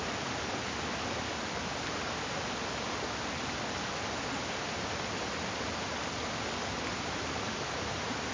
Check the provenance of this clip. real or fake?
real